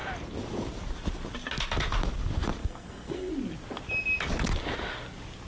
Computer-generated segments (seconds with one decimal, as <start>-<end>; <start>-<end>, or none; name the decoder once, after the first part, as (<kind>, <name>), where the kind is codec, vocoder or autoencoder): 2.6-3.3 (codec, SNAC)